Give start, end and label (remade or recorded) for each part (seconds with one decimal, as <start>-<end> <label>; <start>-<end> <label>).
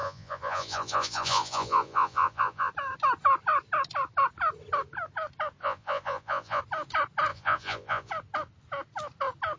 0.0-2.7 remade; 2.7-5.6 recorded; 5.6-6.6 remade; 6.6-7.3 recorded; 7.3-8.1 remade; 8.1-9.6 recorded